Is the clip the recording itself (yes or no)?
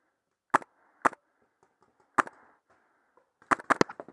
yes